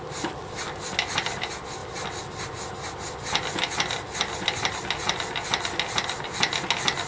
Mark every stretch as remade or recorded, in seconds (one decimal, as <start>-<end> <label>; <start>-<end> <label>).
0.0-7.1 recorded

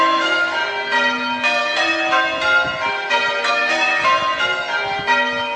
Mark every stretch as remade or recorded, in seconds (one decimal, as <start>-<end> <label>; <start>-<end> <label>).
0.0-0.6 remade; 0.6-3.5 recorded; 3.5-3.9 remade; 3.9-5.6 recorded

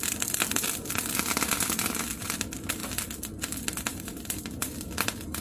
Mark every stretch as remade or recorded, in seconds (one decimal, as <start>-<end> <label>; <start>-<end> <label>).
0.0-2.8 remade; 2.8-3.9 recorded; 3.9-5.4 remade

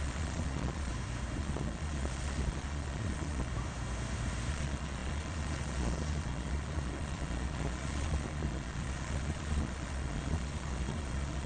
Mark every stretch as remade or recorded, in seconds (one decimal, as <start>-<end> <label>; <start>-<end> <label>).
0.0-0.9 remade; 0.9-1.4 recorded; 1.4-3.5 remade; 3.5-4.5 recorded; 4.5-11.5 remade

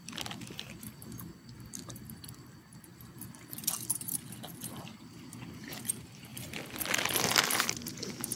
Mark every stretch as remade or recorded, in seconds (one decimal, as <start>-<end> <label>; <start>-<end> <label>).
0.0-2.9 recorded; 2.9-3.7 remade; 3.7-6.3 recorded; 6.3-7.7 remade; 7.7-8.4 recorded

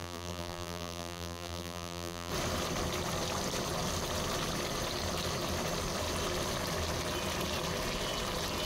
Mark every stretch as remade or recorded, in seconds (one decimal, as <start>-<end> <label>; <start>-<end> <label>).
0.0-2.3 remade; 2.3-8.7 recorded